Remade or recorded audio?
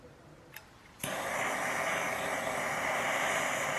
recorded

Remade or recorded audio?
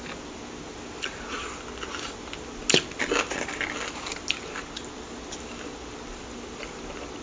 recorded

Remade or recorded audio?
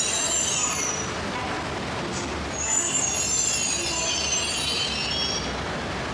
recorded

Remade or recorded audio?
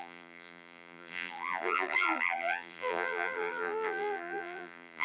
remade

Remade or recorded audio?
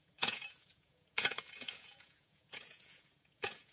remade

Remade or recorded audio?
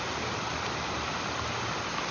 recorded